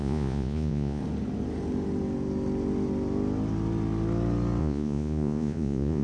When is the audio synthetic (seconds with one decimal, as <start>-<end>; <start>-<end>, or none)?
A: 0.0-1.0; 4.6-6.0